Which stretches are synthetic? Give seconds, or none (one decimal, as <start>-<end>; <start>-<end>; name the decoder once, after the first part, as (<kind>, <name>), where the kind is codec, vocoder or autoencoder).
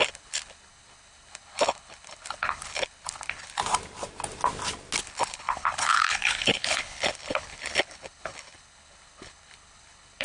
0.0-3.6 (codec, HILCodec); 5.0-10.2